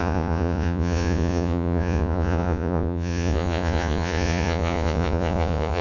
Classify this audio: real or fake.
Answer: fake